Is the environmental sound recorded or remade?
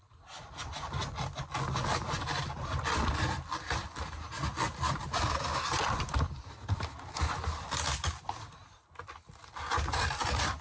recorded